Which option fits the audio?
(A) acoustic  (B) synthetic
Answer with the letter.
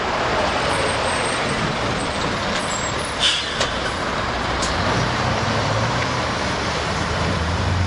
B